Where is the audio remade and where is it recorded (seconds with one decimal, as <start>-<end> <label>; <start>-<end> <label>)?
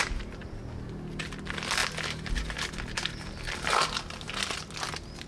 0.0-5.3 recorded